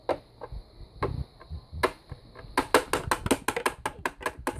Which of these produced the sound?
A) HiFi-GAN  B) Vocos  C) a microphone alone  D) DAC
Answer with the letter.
C